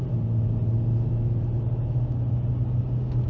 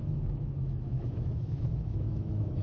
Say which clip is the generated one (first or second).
second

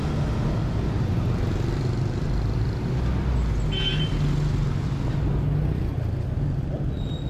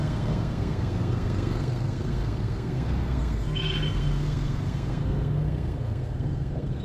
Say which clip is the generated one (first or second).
second